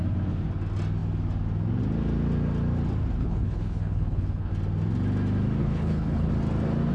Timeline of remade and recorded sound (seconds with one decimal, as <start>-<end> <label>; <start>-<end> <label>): 0.0-3.2 recorded; 3.2-4.5 remade; 4.5-5.6 recorded; 5.6-6.3 remade; 6.3-6.9 recorded